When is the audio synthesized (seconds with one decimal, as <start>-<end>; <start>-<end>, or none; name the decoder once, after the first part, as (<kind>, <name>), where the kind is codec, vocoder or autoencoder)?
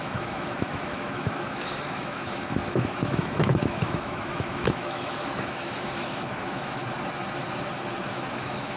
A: 0.0-6.8 (autoencoder, DAC-VAE); 8.1-8.8